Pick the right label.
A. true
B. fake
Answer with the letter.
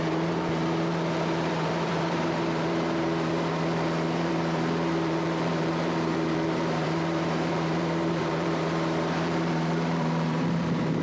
B